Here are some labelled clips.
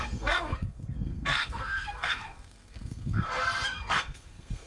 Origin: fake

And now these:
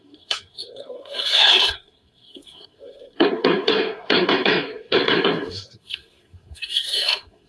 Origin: fake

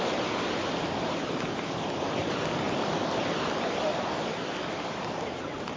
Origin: real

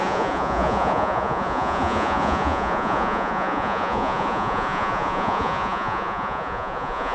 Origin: fake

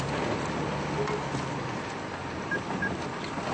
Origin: real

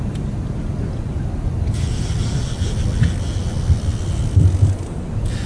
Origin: real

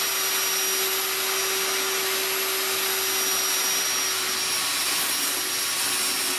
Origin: real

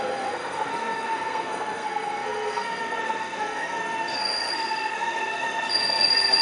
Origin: fake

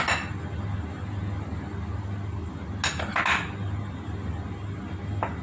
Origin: real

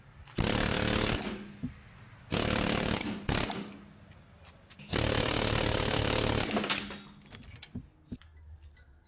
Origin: real